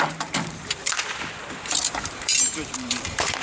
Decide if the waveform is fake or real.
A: fake